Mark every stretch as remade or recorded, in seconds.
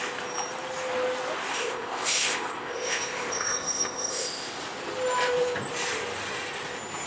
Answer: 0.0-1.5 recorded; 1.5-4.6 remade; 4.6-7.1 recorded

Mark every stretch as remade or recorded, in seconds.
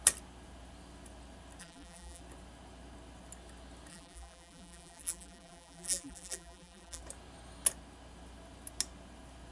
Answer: 0.0-1.6 recorded; 1.6-2.2 remade; 2.2-3.9 recorded; 3.9-7.0 remade; 7.0-9.5 recorded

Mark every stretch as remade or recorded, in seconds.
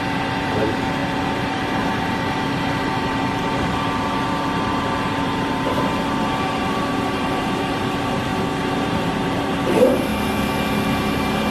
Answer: 0.0-10.1 remade; 10.1-11.0 recorded; 11.0-11.5 remade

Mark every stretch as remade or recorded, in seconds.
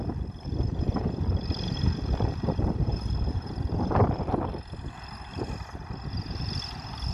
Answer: 0.0-2.9 recorded; 2.9-4.3 remade; 4.3-7.1 recorded